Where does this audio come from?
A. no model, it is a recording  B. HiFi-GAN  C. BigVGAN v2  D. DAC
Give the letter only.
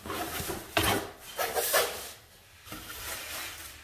A